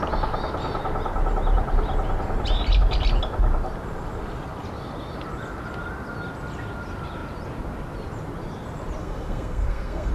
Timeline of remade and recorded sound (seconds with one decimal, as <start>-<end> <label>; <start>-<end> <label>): 0.0-9.0 recorded; 9.0-10.1 remade